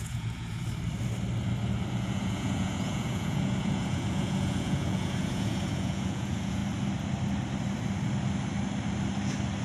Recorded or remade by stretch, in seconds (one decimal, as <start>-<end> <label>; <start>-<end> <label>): 0.0-0.6 remade; 0.6-1.9 recorded; 1.9-6.6 remade; 6.6-9.6 recorded